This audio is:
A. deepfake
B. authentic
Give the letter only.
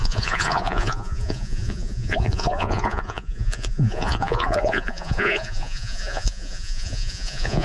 A